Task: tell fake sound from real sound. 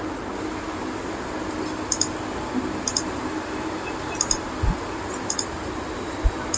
real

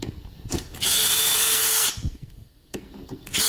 fake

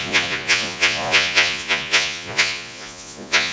fake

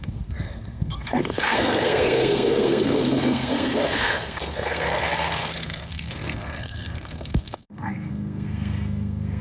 fake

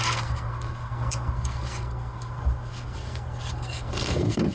fake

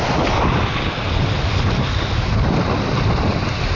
real